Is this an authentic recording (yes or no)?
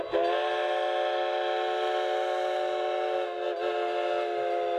yes